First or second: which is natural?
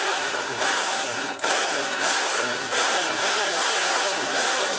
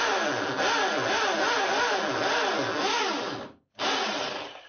second